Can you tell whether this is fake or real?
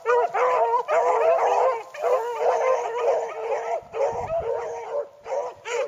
real